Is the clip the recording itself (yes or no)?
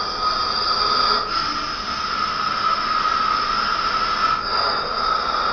yes